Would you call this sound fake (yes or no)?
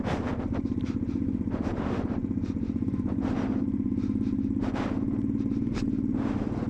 no